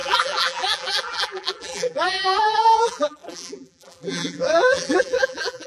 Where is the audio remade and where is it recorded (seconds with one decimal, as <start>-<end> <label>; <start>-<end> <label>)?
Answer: 0.0-5.7 remade